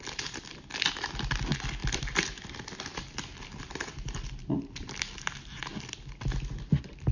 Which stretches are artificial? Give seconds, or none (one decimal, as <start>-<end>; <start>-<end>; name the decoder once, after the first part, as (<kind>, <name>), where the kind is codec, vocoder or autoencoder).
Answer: 1.8-4.9 (vocoder, BigVGAN v2)